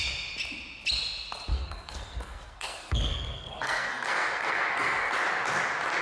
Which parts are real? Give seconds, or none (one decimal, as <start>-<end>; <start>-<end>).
0.0-1.5; 5.1-6.0